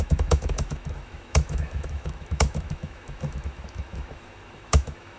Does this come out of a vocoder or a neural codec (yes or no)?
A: yes